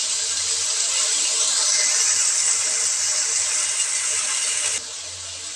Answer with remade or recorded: recorded